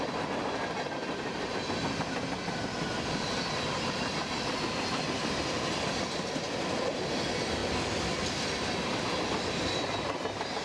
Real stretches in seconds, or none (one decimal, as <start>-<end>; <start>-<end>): 0.0-10.6